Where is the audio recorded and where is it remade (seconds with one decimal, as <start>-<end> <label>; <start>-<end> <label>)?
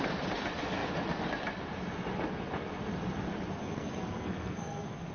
0.0-3.6 recorded; 3.6-5.1 remade